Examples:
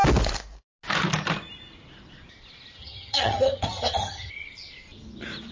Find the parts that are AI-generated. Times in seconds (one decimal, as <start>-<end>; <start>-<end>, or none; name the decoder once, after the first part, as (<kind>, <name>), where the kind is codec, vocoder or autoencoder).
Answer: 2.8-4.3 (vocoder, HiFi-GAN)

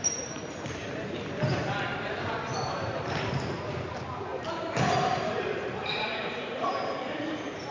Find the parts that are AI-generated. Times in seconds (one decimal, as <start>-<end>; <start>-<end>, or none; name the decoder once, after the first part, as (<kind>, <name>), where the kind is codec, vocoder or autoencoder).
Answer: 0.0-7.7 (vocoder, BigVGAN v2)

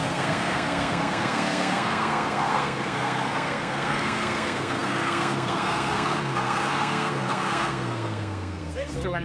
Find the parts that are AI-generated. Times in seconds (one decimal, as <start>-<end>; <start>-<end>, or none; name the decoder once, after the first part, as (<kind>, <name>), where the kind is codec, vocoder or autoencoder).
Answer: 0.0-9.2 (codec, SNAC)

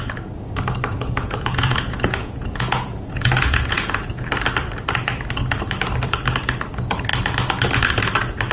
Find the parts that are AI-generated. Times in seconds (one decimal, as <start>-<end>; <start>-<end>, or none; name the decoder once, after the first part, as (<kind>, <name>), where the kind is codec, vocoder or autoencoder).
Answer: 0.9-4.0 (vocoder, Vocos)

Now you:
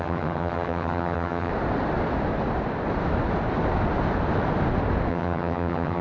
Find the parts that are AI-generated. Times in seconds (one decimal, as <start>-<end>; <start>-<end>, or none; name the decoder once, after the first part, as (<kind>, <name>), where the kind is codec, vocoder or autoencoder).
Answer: 0.0-1.5 (vocoder, HiFi-GAN); 5.1-6.0

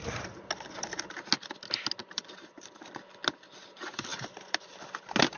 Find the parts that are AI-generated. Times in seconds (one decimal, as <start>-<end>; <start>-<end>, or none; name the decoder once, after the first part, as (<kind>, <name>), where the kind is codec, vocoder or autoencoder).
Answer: 2.0-2.7 (vocoder, BigVGAN v2); 4.1-4.7